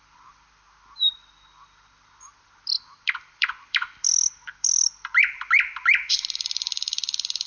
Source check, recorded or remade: remade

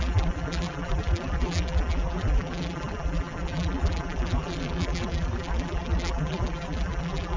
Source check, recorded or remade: remade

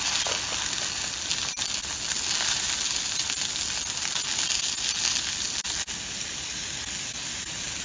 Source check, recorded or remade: recorded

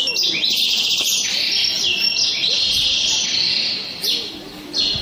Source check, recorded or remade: recorded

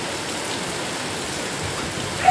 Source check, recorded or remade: remade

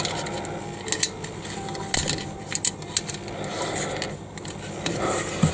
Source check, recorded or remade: recorded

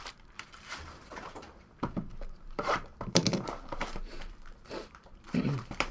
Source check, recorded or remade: remade